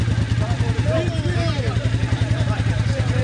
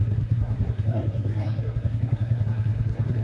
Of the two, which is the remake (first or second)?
second